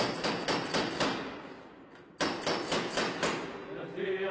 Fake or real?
real